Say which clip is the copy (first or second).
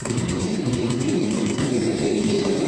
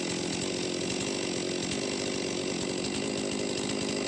first